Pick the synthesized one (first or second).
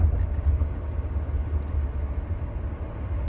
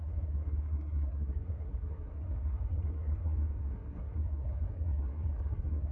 second